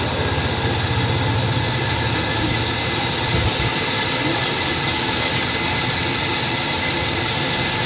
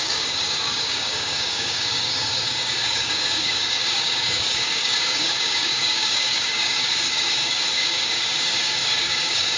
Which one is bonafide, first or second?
first